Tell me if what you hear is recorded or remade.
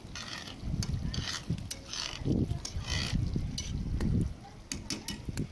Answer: recorded